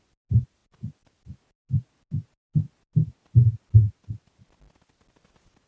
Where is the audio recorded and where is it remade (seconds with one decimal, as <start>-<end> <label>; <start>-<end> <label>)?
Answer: 0.0-5.7 recorded